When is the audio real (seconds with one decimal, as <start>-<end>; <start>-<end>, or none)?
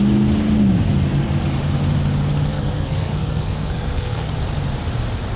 0.0-2.5; 4.3-5.4